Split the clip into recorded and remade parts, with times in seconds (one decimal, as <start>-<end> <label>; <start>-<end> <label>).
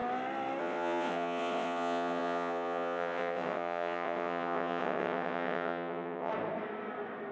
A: 0.0-0.6 recorded; 0.6-6.3 remade; 6.3-7.3 recorded